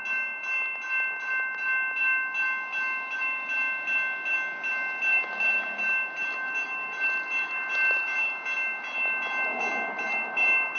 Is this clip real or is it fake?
real